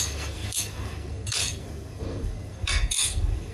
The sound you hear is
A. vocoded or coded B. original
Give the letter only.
A